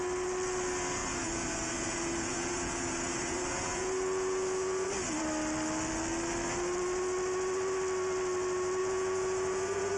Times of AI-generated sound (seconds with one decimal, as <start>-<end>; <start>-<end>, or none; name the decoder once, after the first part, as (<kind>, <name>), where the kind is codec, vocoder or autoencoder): 1.0-4.9 (vocoder, Vocos); 8.8-10.0